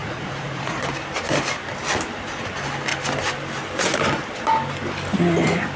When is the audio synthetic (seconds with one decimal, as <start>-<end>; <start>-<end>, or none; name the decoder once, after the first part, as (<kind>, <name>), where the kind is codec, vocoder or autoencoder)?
0.0-0.8 (vocoder, Vocos)